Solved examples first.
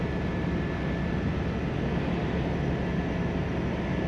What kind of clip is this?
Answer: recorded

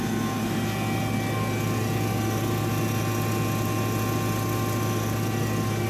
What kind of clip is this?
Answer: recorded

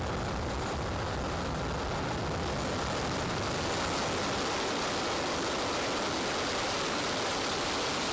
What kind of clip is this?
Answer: recorded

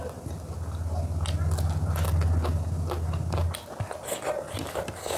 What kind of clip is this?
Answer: recorded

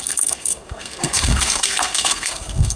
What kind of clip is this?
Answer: remade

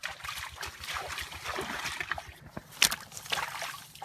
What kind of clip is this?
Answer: recorded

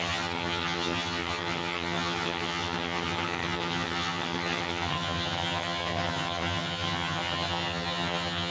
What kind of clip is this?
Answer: remade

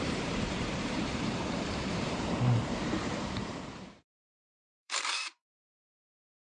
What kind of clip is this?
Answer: remade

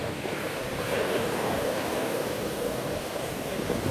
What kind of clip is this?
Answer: remade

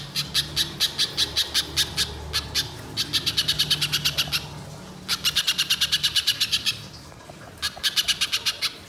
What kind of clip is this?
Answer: recorded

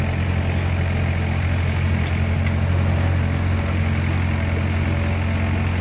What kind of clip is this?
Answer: recorded